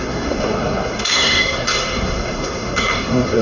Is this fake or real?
fake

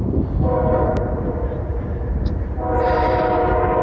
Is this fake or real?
fake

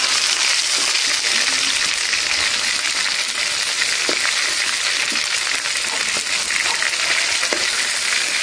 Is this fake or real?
real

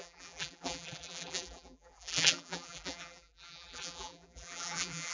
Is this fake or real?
fake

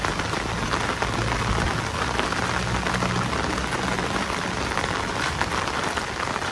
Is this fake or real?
real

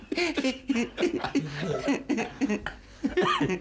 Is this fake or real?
real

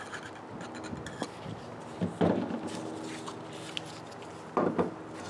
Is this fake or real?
real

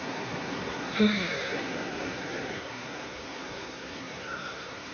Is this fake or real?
fake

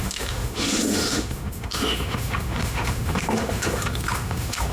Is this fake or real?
fake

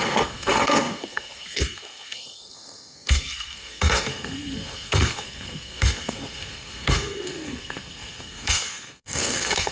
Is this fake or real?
fake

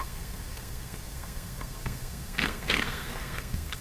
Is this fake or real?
fake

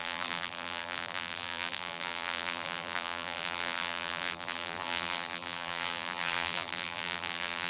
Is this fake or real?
fake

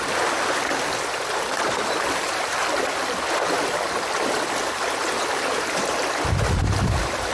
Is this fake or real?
real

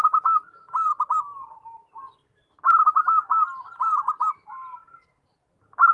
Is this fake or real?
real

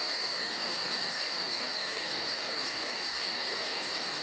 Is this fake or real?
fake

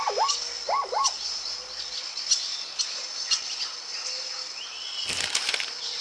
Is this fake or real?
real